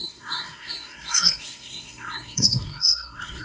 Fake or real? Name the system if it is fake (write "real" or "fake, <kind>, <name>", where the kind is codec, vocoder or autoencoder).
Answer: fake, codec, SNAC